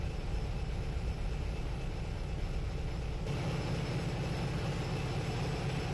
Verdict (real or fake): real